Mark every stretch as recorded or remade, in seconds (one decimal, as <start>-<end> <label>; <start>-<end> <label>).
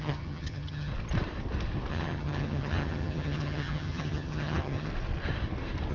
0.0-0.9 remade; 0.9-1.9 recorded; 1.9-4.9 remade; 4.9-5.9 recorded